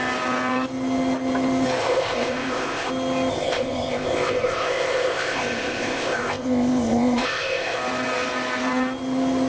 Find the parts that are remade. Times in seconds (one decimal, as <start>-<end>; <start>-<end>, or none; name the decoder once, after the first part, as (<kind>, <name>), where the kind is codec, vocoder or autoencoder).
1.8-2.9 (codec, ZipCodec); 3.3-7.8